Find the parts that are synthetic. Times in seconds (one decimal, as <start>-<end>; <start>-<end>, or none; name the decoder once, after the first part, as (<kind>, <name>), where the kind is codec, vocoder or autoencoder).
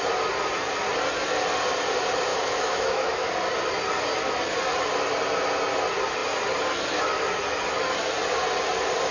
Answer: 2.3-3.3 (autoencoder, DAC-VAE)